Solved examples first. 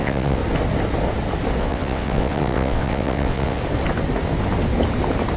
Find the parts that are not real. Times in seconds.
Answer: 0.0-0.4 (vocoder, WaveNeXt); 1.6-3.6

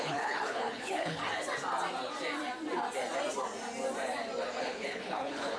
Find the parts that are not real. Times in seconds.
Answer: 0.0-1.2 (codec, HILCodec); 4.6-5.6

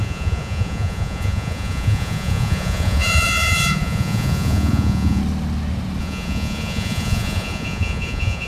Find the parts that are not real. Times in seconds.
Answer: 0.0-5.2 (vocoder, Vocos); 6.0-8.5

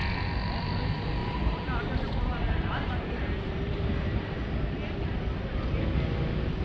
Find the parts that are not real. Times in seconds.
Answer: 1.2-1.9 (vocoder, BigVGAN v2); 2.3-4.4